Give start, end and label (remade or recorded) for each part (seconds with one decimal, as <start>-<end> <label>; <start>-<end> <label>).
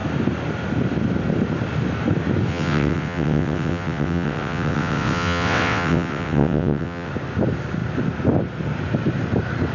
0.0-2.5 recorded; 2.5-7.1 remade; 7.1-9.7 recorded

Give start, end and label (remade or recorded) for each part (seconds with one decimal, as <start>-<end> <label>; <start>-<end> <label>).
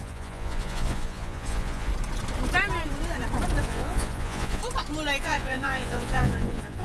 0.0-1.9 remade; 1.9-3.6 recorded; 3.6-4.6 remade; 4.6-5.2 recorded; 5.2-6.8 remade